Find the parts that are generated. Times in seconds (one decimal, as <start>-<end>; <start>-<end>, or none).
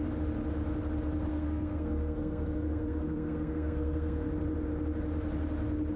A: 1.3-4.3